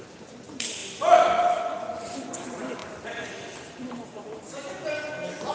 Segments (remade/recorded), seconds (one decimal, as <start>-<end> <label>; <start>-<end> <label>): 0.0-2.8 recorded; 2.8-3.3 remade; 3.3-3.8 recorded; 3.8-4.5 remade; 4.5-5.5 recorded